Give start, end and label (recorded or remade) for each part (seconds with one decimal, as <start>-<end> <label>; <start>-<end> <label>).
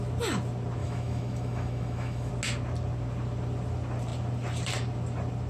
0.0-0.8 recorded; 0.8-2.3 remade; 2.3-5.5 recorded